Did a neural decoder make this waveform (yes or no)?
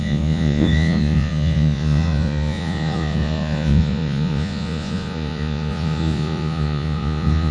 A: yes